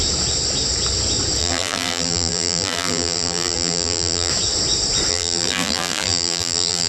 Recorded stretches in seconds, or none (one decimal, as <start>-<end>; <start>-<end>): 0.0-1.4; 4.3-5.1